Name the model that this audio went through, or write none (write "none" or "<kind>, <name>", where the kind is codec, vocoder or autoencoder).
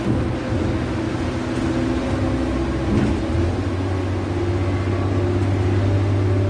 none